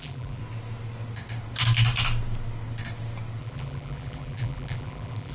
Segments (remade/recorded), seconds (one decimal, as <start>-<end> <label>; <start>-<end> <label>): 0.0-0.4 remade; 0.4-3.4 recorded; 3.4-5.3 remade